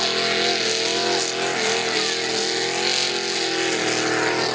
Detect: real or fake real